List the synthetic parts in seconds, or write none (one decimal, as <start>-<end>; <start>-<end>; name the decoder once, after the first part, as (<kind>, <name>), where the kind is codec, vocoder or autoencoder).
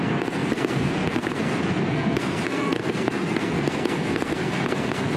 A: 0.0-5.2 (codec, SNAC)